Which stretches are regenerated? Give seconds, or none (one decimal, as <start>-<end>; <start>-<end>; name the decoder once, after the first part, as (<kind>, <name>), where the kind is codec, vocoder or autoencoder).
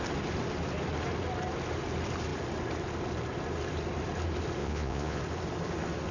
4.6-5.2 (vocoder, Vocos)